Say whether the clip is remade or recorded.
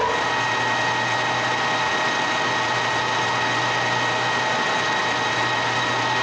recorded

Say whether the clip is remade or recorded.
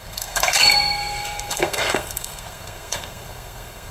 remade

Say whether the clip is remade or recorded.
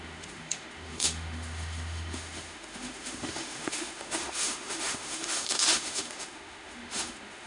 remade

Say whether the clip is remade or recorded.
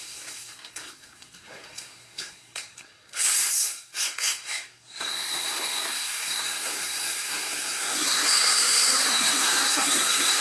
remade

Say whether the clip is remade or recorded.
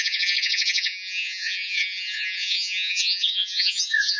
remade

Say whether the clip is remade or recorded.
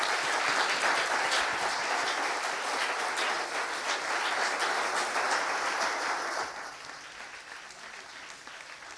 recorded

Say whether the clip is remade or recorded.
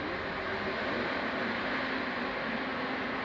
recorded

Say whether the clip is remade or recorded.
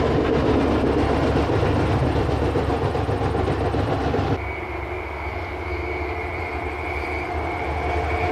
recorded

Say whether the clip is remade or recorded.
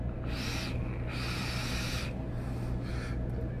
recorded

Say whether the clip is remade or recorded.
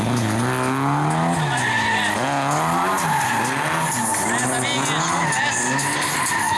recorded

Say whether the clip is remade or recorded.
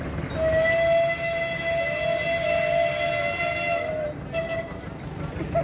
recorded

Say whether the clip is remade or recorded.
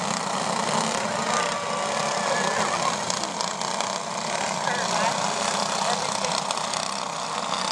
recorded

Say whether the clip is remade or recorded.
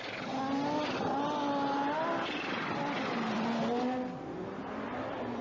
recorded